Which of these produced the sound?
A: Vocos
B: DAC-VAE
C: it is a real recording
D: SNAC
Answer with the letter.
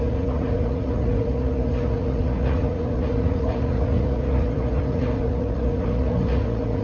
A